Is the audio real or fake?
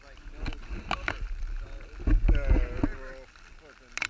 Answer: real